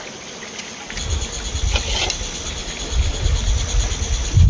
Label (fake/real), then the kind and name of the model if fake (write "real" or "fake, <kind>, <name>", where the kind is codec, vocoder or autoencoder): real